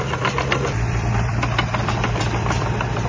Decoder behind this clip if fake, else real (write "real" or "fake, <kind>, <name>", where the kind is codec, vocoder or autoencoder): fake, vocoder, BigVGAN v2